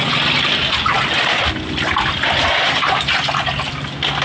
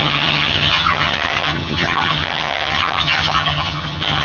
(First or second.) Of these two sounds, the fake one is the second